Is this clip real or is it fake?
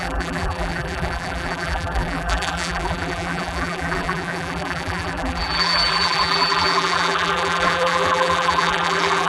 fake